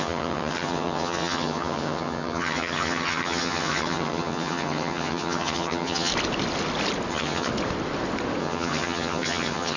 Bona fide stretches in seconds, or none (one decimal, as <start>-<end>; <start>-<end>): 6.1-7.1; 7.5-8.4